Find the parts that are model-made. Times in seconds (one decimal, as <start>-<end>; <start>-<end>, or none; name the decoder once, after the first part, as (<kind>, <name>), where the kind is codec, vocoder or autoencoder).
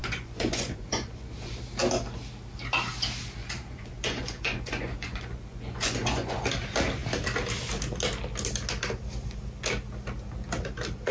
0.0-1.5 (vocoder, Vocos); 3.4-6.4